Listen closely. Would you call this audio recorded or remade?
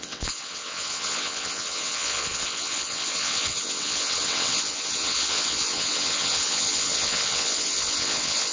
remade